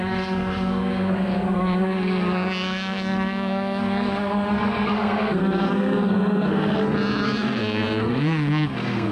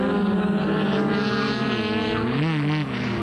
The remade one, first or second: first